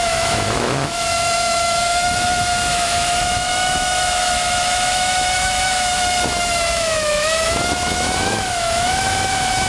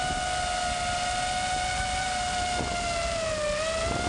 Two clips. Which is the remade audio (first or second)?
first